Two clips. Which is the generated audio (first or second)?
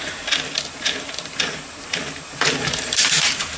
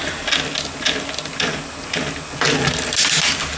first